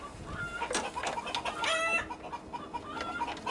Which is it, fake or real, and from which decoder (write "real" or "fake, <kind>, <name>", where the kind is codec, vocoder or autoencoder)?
real